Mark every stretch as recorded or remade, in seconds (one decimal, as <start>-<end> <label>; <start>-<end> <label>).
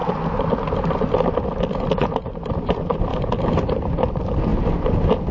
0.0-2.0 recorded; 2.0-3.1 remade; 3.1-3.7 recorded; 3.7-4.5 remade; 4.5-5.3 recorded